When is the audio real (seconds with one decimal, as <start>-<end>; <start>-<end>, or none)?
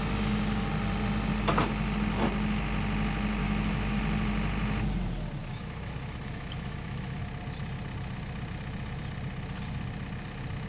0.0-3.4; 4.0-5.4; 7.2-10.7